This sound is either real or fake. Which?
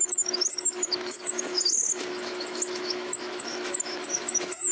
fake